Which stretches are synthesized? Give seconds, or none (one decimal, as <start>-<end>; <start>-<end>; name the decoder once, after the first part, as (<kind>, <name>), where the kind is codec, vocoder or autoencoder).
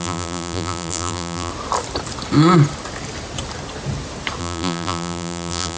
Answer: 0.0-1.5 (vocoder, BigVGAN v2); 4.4-5.8